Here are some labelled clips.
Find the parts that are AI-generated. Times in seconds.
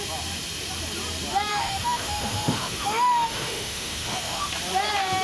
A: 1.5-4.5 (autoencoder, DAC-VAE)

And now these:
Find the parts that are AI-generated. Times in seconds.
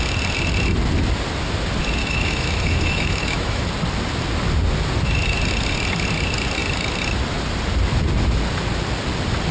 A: 2.0-3.6 (autoencoder, DAC-VAE)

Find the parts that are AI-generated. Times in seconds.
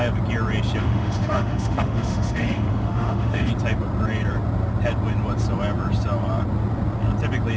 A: 0.8-3.5 (autoencoder, DAC-VAE)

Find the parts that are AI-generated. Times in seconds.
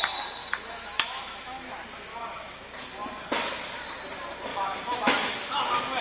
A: 0.4-1.7 (autoencoder, DAC-VAE); 2.1-2.6; 4.5-5.6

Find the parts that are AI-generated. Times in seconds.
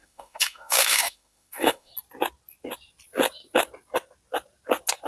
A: 0.0-1.9 (autoencoder, DAC-VAE)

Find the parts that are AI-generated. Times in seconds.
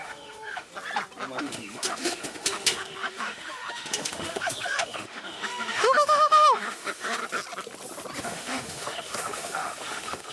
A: 0.0-0.7 (autoencoder, DAC-VAE); 1.4-7.2; 8.2-10.3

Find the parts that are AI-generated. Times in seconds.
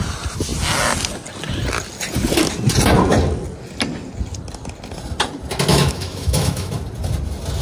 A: 5.7-6.7 (autoencoder, DAC-VAE)